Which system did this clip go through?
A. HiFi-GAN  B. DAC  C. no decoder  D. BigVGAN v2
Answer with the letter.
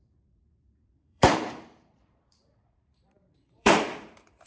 D